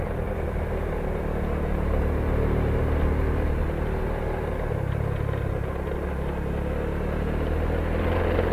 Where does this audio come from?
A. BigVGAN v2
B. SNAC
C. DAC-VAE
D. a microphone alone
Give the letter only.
D